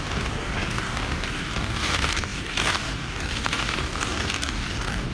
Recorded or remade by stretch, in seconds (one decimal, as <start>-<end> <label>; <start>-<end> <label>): 0.0-5.1 remade